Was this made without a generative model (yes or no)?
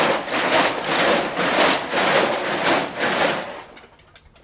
yes